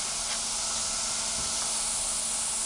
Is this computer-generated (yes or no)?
no